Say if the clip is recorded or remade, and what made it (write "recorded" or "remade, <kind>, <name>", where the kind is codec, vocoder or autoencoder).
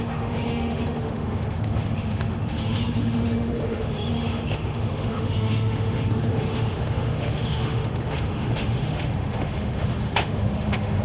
remade, autoencoder, DAC-VAE